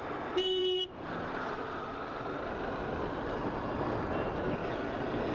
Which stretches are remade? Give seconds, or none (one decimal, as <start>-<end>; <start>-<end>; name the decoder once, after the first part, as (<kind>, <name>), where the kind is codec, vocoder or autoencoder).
none